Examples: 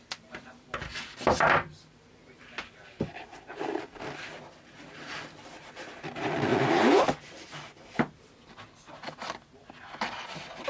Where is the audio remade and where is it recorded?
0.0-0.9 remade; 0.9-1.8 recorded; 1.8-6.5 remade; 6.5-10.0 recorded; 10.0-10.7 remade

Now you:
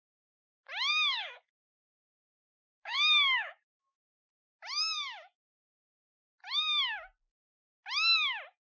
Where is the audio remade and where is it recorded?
0.0-0.9 recorded; 0.9-4.2 remade; 4.2-8.7 recorded

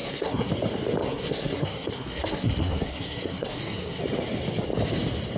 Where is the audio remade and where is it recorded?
0.0-0.5 remade; 0.5-1.0 recorded; 1.0-4.0 remade; 4.0-5.4 recorded

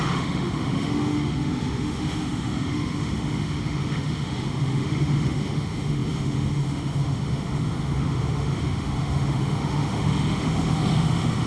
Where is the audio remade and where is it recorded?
0.0-11.5 remade

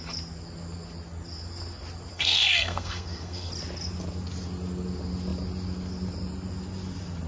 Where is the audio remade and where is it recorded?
0.0-2.1 recorded; 2.1-3.5 remade; 3.5-7.3 recorded

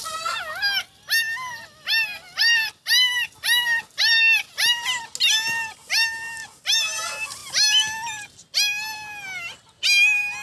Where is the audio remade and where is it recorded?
0.0-10.4 recorded

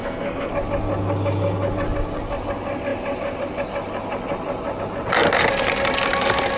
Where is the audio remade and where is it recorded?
0.0-0.5 remade; 0.5-6.6 recorded